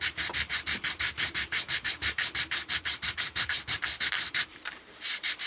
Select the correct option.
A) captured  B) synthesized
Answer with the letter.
B